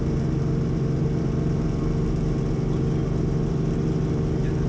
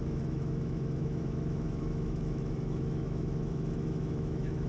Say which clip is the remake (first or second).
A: second